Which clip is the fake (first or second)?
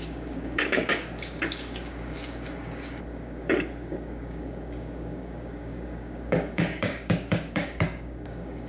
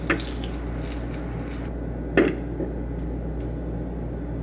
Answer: first